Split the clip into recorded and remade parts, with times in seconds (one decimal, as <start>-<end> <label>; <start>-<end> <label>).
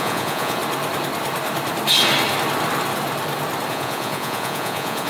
0.0-0.6 remade; 0.6-3.7 recorded; 3.7-5.1 remade